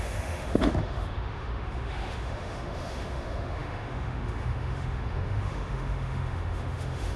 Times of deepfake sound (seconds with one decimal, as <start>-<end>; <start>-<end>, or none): 0.0-7.2